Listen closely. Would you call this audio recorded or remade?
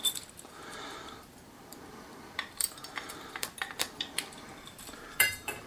remade